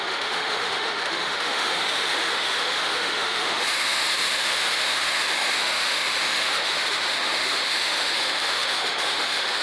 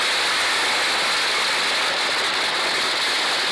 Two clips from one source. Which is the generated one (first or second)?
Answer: first